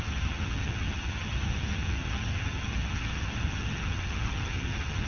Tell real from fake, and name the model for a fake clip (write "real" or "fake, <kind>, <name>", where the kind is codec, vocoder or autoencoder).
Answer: fake, vocoder, HiFi-GAN